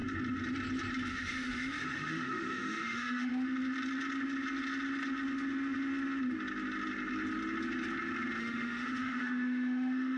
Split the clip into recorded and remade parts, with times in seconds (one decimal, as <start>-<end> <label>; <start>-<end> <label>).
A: 0.0-1.1 recorded; 1.1-3.3 remade; 3.3-8.4 recorded; 8.4-10.2 remade